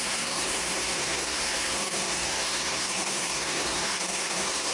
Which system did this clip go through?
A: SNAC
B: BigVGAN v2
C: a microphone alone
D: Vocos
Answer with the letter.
A